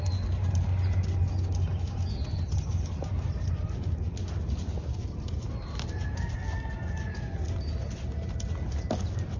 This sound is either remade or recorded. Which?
recorded